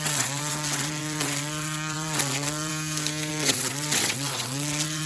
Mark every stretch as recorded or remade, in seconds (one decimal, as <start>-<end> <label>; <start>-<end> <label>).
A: 0.0-2.7 remade; 2.7-3.3 recorded; 3.3-5.1 remade